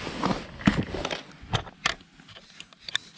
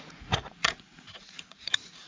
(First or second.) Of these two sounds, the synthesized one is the second